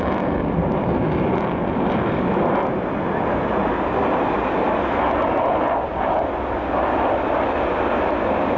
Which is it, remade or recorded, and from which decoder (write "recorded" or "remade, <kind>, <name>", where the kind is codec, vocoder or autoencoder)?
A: recorded